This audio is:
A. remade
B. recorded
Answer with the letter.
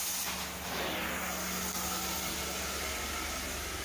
B